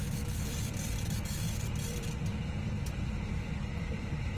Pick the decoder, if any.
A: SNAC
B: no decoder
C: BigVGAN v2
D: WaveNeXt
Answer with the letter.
C